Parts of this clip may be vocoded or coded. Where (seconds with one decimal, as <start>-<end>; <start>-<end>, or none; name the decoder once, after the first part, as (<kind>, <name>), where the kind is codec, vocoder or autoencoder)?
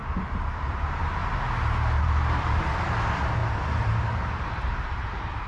0.7-1.2 (vocoder, BigVGAN v2); 2.0-5.5